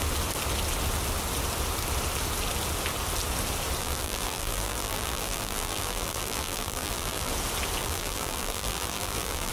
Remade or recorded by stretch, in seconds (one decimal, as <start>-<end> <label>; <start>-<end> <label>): 0.0-3.8 recorded; 3.8-7.3 remade; 7.3-7.8 recorded; 7.8-9.5 remade